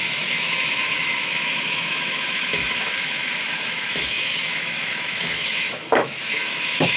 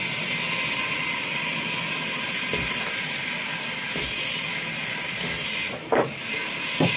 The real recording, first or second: second